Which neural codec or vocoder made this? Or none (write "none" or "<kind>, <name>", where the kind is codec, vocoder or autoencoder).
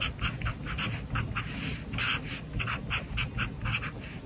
none